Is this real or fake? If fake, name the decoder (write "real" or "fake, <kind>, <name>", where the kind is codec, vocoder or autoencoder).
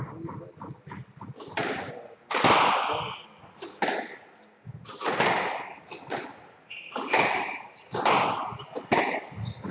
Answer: real